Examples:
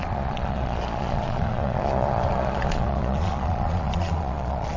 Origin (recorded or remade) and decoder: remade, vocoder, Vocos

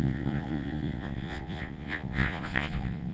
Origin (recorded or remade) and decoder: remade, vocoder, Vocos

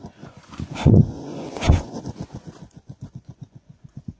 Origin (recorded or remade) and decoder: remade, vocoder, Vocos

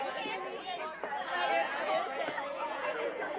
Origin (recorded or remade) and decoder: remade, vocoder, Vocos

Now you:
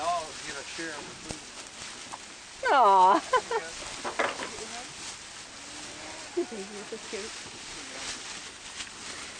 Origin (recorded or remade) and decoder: recorded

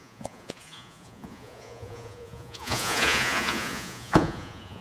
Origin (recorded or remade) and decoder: remade, vocoder, Vocos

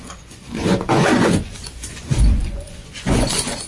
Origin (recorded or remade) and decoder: remade, vocoder, Vocos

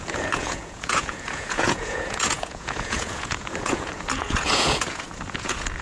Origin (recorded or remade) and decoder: remade, vocoder, Vocos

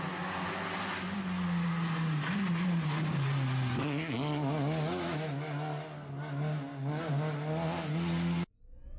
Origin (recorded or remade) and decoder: recorded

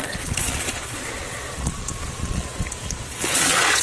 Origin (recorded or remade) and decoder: remade, vocoder, Vocos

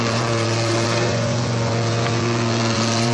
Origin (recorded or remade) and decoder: remade, vocoder, Vocos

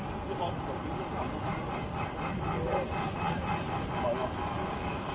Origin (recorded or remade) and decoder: recorded